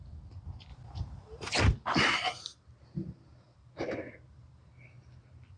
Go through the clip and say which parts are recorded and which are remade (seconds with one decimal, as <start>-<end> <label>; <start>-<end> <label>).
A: 0.0-5.6 recorded